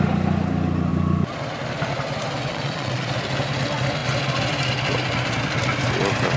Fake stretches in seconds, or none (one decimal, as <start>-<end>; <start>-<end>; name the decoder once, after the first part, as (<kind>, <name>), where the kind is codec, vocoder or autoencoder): 2.5-3.1 (vocoder, Vocos)